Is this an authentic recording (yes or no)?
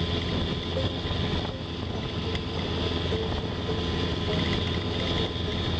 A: yes